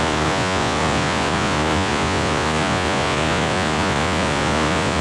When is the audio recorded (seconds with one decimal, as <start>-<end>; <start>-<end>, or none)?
none